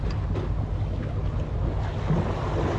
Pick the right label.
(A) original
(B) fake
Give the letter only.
A